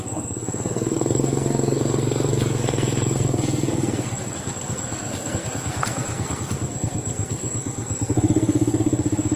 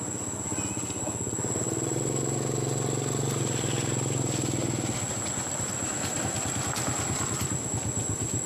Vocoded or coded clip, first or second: first